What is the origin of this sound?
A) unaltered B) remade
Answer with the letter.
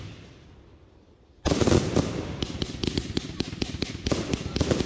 A